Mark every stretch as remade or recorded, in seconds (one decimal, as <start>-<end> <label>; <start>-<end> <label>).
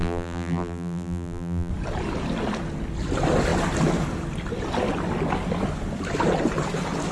0.0-1.7 remade; 1.7-7.1 recorded